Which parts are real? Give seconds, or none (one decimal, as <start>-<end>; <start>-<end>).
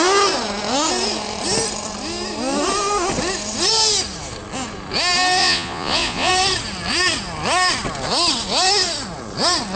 0.0-5.4; 6.3-9.8